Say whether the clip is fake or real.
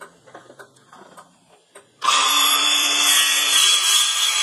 fake